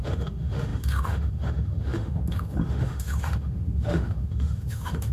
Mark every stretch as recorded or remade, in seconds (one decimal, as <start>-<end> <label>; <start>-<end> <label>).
0.0-5.1 remade